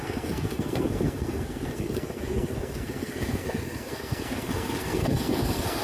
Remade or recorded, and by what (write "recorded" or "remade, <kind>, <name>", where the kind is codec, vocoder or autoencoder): remade, codec, SNAC